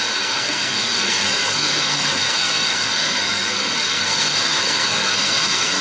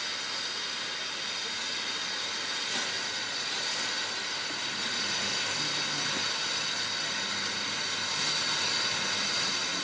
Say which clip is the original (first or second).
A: second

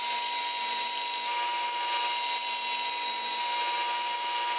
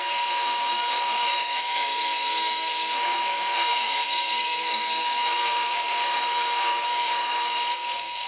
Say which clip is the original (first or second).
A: first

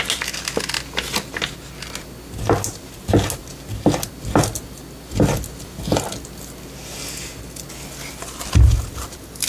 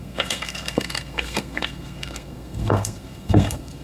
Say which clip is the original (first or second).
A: first